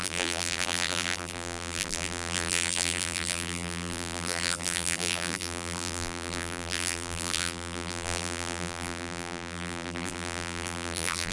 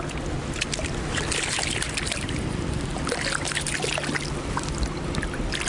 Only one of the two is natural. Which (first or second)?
second